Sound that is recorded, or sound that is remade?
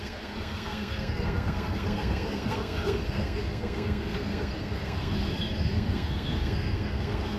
remade